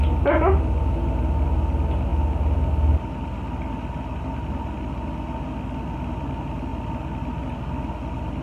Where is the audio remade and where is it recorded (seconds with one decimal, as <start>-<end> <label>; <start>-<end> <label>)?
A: 0.0-8.4 recorded